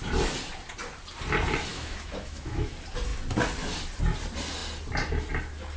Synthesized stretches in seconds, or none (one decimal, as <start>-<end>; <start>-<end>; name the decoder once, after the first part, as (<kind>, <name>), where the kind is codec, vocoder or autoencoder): 1.7-2.7 (autoencoder, DAC-VAE)